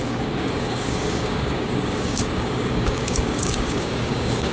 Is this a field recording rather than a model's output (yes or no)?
no